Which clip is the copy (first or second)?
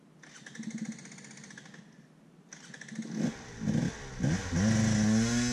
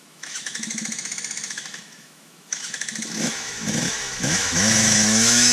second